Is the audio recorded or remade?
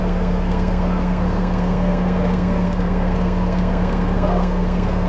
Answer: remade